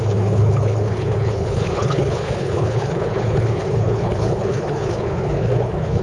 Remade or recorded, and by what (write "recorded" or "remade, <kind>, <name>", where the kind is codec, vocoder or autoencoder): remade, codec, HILCodec